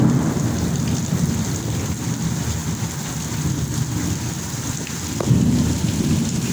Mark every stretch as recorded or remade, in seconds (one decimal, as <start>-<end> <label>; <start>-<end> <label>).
0.0-6.5 recorded